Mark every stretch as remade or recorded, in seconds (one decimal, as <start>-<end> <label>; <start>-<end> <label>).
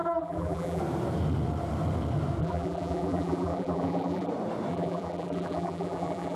0.0-0.8 remade; 0.8-2.4 recorded; 2.4-4.3 remade; 4.3-4.7 recorded; 4.7-6.4 remade